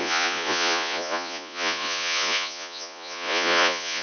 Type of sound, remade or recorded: remade